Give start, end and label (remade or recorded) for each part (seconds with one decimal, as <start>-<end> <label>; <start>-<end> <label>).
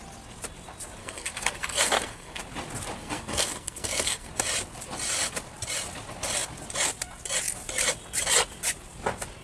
0.0-1.0 recorded; 1.0-2.4 remade; 2.4-3.0 recorded; 3.0-4.3 remade; 4.3-9.4 recorded